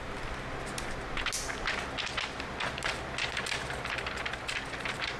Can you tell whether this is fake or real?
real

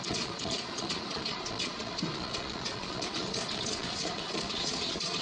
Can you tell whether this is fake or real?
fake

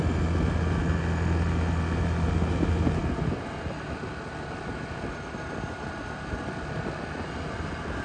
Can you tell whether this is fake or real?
real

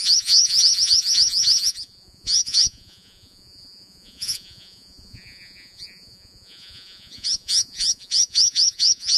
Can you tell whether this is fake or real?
fake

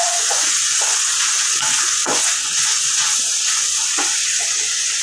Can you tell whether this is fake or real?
fake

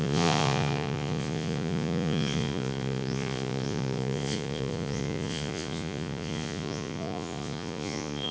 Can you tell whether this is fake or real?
fake